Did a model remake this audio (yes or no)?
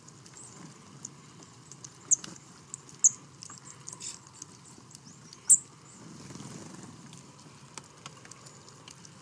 no